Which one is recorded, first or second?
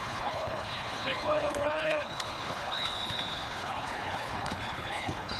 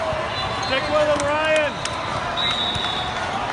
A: second